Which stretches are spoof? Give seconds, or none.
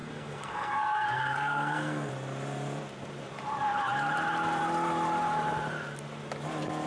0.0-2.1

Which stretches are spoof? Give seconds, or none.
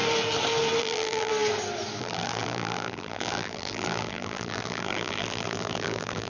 0.8-1.3; 2.0-6.3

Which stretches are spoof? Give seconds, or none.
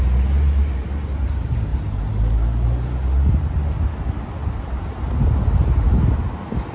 none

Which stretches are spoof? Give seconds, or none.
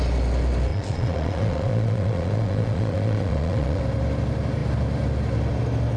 0.7-3.8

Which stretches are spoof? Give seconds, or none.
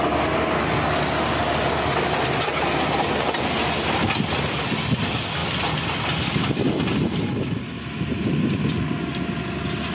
none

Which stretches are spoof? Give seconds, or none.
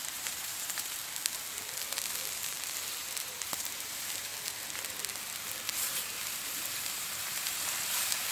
0.0-1.0; 3.2-4.3; 5.6-8.3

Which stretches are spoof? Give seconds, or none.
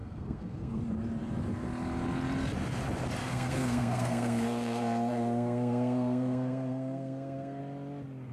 0.0-0.8; 3.2-7.6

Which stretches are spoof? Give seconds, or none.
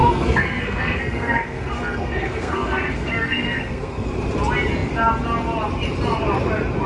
0.0-4.1